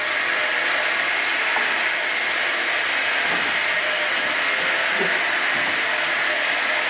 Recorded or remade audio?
recorded